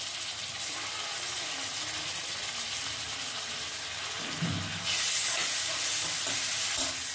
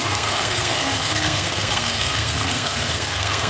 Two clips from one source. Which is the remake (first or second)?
second